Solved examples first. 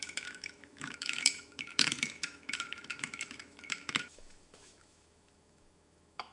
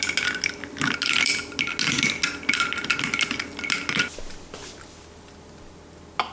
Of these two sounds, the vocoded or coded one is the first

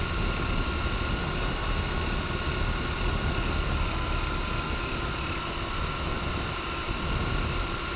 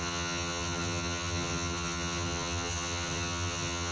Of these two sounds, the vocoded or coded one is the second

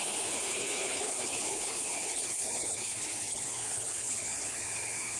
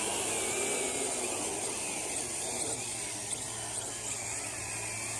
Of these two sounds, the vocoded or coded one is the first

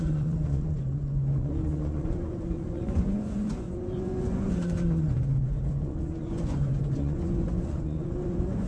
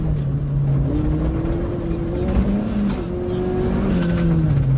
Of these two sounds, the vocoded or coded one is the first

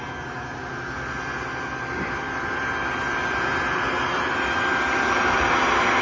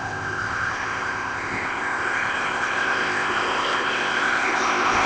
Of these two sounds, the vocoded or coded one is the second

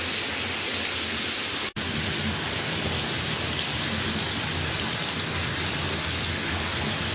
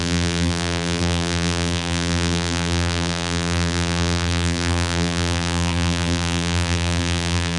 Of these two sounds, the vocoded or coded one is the second